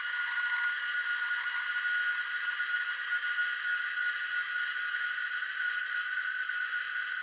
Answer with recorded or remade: recorded